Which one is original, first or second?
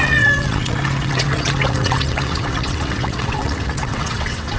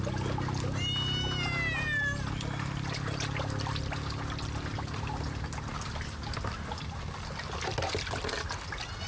second